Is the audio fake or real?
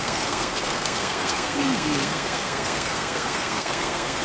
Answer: fake